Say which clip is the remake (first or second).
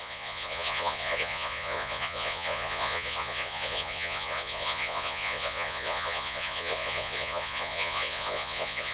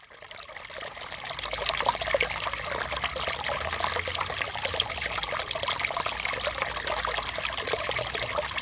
first